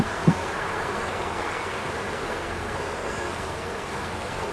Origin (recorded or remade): remade